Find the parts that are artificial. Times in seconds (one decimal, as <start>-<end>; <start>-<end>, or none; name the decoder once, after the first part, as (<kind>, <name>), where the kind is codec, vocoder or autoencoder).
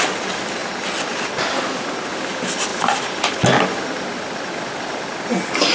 none